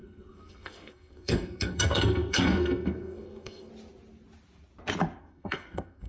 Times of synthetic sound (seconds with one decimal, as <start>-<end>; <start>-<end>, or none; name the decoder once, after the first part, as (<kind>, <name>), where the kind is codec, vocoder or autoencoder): 0.0-3.7 (codec, SNAC); 5.2-6.1